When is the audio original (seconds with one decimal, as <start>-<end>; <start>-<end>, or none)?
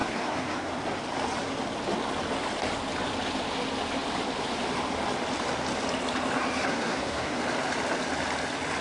0.7-6.7; 7.4-8.8